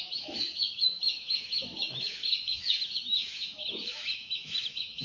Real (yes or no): no